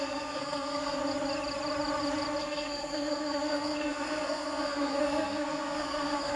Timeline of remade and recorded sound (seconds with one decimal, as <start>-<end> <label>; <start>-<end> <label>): 0.0-1.0 remade; 1.0-2.4 recorded; 2.4-6.4 remade